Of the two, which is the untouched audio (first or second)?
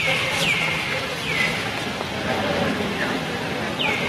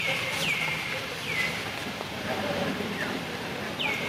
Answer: first